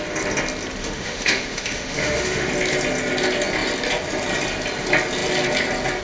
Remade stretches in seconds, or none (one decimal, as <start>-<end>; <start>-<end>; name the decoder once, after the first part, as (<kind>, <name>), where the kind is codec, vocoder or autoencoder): 0.8-2.5 (autoencoder, DAC-VAE)